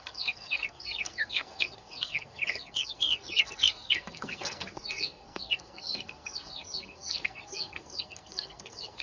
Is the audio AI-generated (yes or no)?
yes